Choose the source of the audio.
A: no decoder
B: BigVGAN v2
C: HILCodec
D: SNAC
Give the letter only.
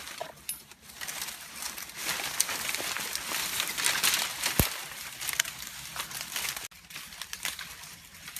A